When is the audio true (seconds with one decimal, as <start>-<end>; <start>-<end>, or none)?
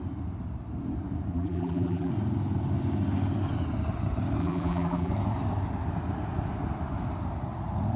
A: 0.0-1.3; 2.1-4.4; 5.1-8.0